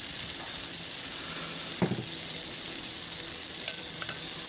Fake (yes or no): no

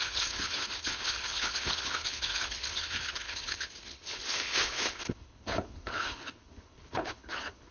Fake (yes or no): yes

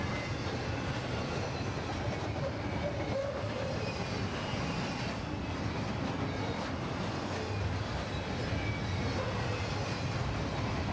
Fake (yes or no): no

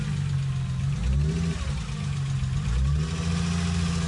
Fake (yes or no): no